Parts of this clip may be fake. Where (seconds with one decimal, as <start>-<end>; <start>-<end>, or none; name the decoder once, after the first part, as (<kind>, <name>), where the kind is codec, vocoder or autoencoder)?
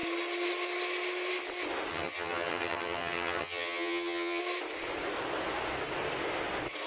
1.9-4.4 (vocoder, HiFi-GAN)